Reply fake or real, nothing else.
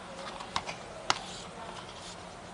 real